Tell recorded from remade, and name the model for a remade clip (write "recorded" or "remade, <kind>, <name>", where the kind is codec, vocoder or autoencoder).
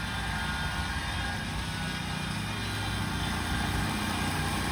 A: recorded